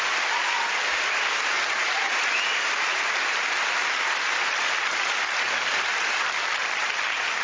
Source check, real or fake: real